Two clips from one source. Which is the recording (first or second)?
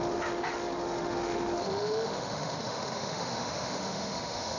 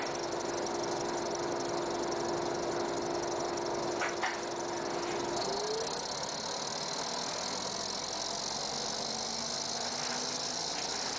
second